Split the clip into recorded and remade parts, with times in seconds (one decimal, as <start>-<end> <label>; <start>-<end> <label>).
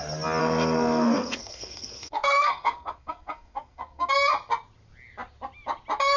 0.0-0.4 recorded; 0.4-4.1 remade; 4.1-6.2 recorded